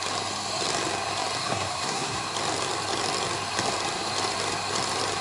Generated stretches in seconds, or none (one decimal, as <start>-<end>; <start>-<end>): 1.4-2.2